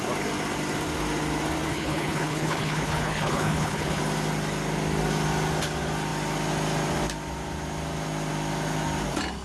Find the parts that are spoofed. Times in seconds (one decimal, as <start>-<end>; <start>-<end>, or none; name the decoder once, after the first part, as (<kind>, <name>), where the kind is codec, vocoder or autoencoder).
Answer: 1.7-4.0 (codec, HILCodec)